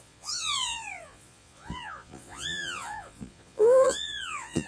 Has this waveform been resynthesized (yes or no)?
yes